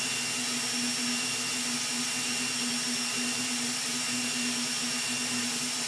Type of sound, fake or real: real